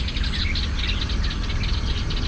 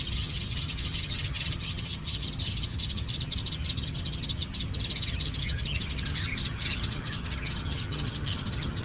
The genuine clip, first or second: first